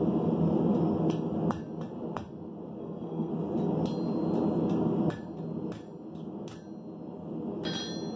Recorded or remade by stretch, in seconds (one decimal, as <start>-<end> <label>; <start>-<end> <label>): 0.0-2.8 recorded; 2.8-3.3 remade; 3.3-8.2 recorded